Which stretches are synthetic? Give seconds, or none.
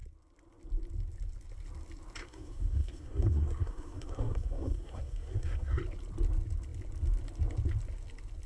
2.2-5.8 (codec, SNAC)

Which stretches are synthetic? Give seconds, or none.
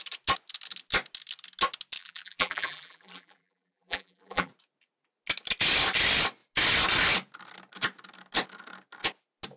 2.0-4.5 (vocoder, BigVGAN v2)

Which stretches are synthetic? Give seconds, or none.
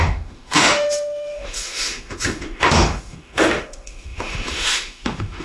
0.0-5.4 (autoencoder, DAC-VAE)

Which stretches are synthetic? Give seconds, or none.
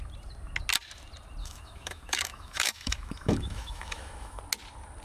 1.4-4.4 (autoencoder, DAC-VAE)